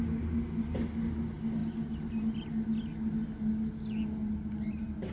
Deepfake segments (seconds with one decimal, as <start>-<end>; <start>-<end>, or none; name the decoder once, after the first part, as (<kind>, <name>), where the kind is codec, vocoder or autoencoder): none